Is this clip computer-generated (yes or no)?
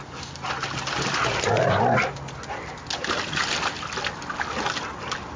no